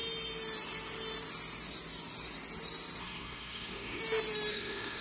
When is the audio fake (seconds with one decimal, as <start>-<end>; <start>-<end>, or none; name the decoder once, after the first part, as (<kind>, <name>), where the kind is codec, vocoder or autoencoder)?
3.0-4.0 (codec, SNAC); 4.5-5.0